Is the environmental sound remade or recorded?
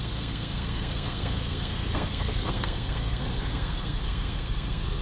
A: remade